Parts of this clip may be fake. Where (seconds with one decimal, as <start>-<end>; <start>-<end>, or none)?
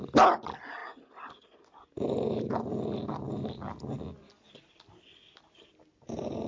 none